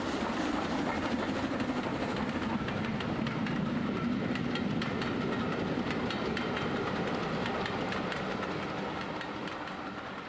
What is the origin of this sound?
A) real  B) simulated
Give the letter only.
A